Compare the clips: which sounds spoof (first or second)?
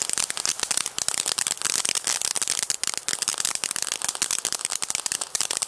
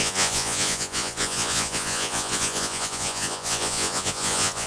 second